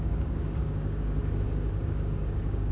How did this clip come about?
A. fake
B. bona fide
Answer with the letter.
A